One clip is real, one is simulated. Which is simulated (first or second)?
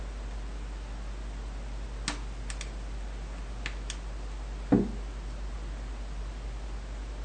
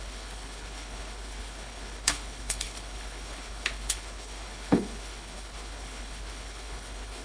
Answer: second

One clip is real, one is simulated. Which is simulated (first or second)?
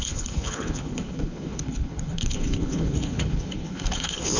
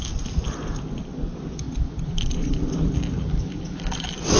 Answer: first